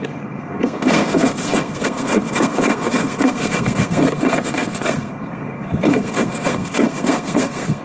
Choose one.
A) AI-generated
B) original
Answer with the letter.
A